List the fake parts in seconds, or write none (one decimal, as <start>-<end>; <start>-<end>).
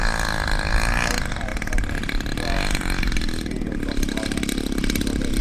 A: none